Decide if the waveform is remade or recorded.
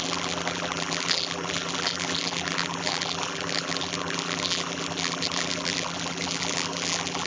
remade